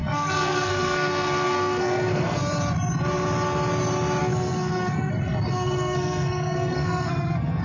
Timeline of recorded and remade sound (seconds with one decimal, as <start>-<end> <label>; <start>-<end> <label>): 0.0-2.4 remade; 2.4-4.2 recorded; 4.2-5.1 remade; 5.1-5.5 recorded; 5.5-7.6 remade